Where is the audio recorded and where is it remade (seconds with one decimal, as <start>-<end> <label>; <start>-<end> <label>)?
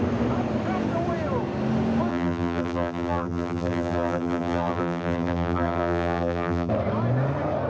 0.0-2.1 recorded; 2.1-6.7 remade; 6.7-7.7 recorded